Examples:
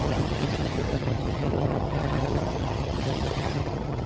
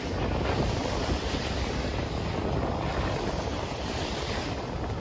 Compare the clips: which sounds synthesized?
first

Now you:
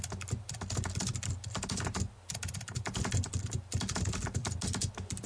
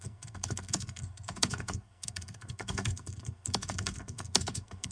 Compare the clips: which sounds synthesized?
second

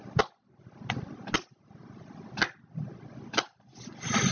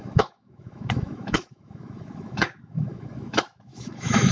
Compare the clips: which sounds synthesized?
second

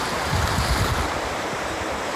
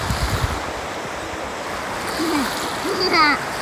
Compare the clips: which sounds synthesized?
first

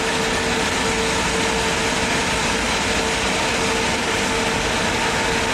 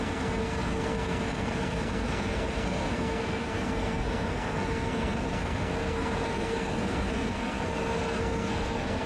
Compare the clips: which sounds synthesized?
second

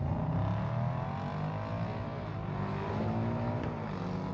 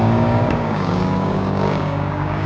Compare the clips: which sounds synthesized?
second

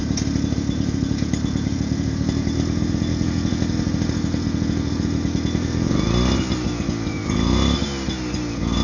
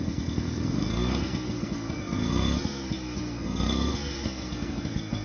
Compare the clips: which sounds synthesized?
second